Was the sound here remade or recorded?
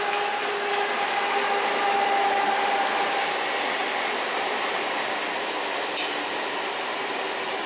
recorded